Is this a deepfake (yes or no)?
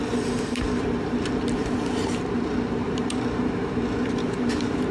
yes